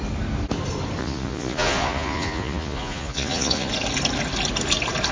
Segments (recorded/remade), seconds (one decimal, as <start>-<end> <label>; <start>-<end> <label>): 0.0-1.0 recorded; 1.0-3.7 remade; 3.7-5.1 recorded

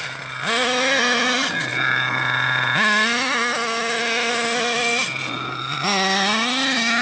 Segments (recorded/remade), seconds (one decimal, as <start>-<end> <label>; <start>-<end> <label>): 0.0-7.0 recorded

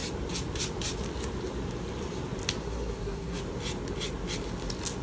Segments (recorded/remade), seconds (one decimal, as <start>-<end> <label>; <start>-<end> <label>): 0.0-2.6 recorded; 2.6-3.4 remade; 3.4-5.0 recorded

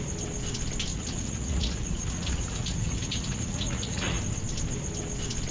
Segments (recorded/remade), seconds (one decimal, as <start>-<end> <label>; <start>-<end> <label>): 0.0-0.9 recorded; 0.9-4.2 remade; 4.2-5.5 recorded

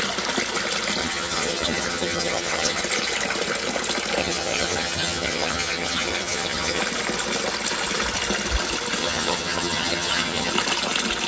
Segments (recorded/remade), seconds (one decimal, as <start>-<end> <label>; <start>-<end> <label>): 0.0-1.0 recorded; 1.0-2.8 remade; 2.8-4.2 recorded; 4.2-6.8 remade; 6.8-9.0 recorded; 9.0-10.5 remade; 10.5-11.3 recorded